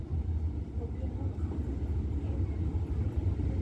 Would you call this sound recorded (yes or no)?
yes